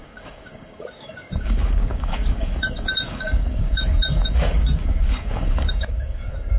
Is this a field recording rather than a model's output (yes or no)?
no